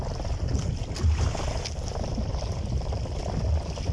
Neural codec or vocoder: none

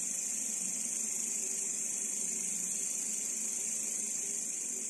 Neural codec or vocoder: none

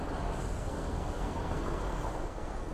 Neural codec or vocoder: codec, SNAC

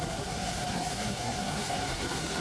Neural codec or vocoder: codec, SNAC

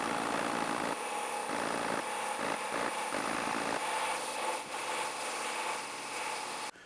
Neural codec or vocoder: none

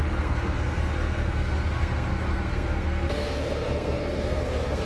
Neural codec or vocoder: codec, SNAC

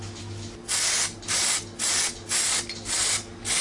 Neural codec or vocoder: none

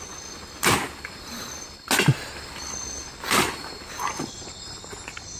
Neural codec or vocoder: none